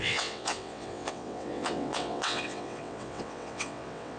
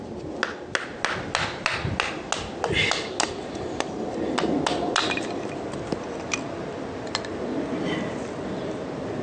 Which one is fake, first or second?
first